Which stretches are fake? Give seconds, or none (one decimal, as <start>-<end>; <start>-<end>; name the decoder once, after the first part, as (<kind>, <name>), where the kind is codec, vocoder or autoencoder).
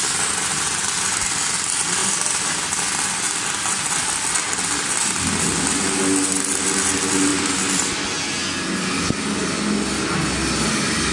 none